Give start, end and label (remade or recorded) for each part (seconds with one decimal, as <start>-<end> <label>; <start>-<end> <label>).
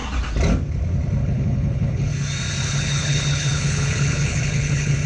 0.0-1.2 recorded; 1.2-2.1 remade; 2.1-2.6 recorded; 2.6-5.1 remade